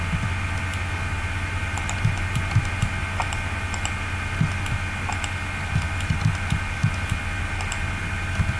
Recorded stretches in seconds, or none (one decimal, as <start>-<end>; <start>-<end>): 0.0-8.6